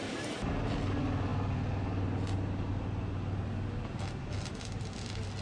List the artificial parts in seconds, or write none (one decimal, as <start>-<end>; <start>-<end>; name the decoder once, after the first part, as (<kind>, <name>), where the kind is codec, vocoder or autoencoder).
none